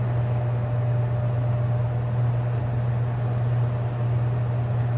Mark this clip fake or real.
real